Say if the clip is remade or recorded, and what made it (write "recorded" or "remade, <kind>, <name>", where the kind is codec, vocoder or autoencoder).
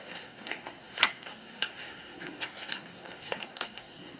remade, codec, SNAC